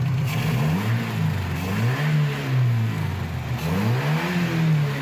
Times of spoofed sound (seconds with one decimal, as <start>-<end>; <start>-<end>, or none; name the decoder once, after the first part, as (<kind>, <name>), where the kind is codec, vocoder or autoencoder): 2.4-3.1 (codec, SNAC)